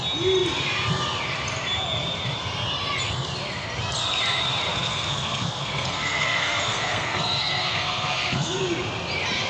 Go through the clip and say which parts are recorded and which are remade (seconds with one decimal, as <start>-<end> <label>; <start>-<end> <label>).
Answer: 0.0-4.7 recorded; 4.7-8.6 remade; 8.6-9.5 recorded